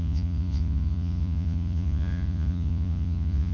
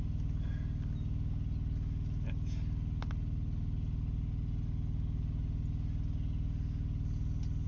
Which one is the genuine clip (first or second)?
second